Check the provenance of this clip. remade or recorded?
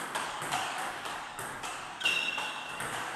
remade